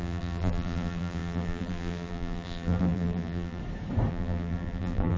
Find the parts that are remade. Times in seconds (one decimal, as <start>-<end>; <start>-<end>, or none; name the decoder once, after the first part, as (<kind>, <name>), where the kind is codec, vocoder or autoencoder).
0.0-3.6 (vocoder, BigVGAN v2); 4.1-5.2